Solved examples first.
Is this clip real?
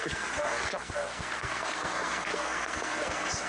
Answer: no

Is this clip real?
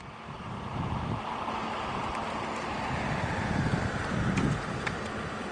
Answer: no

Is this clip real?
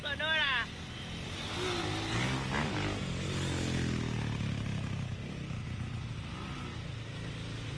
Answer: yes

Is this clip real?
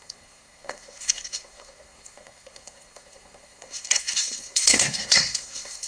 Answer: no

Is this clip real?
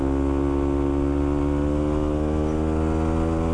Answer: yes